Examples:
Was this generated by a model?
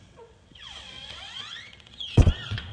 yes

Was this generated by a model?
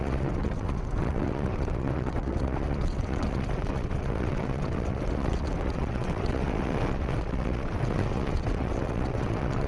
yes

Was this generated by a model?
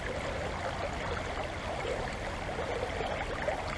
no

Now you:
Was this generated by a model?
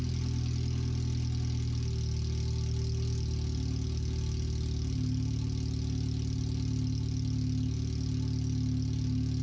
no